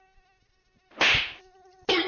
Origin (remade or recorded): recorded